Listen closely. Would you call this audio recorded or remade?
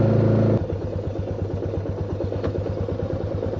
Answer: recorded